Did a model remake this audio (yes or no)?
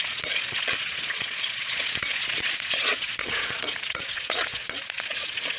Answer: yes